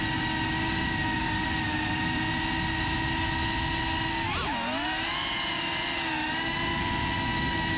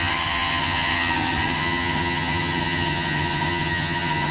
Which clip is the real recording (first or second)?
first